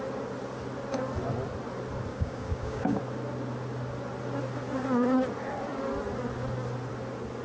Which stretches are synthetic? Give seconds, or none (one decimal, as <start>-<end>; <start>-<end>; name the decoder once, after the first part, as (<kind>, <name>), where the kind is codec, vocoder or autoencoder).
2.1-3.0 (codec, DAC)